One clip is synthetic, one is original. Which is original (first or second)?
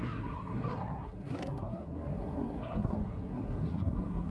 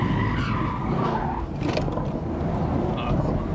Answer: second